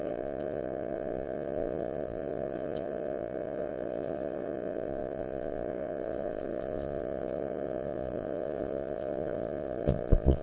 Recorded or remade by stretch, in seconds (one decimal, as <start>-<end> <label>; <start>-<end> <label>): 0.0-10.4 remade